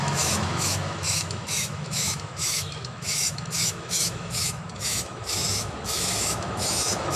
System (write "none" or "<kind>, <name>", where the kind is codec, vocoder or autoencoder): autoencoder, DAC-VAE